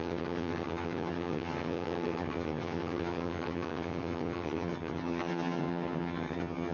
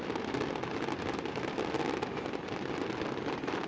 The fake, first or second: first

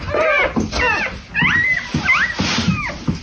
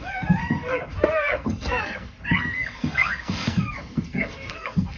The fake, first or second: second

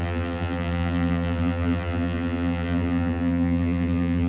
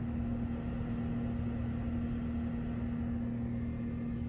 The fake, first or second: first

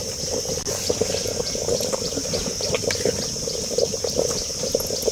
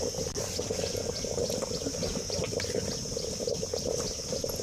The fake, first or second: first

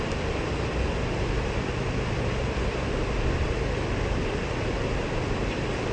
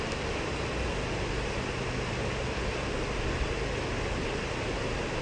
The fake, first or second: first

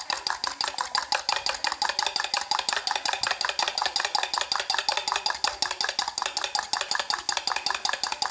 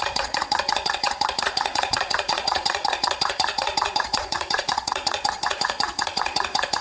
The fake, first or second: second